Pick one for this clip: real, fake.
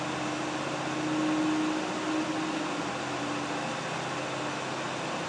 real